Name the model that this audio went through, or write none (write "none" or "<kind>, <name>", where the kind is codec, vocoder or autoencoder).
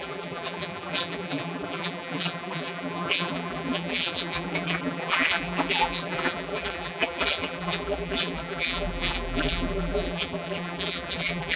vocoder, BigVGAN v2